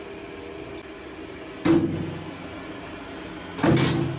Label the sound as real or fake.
real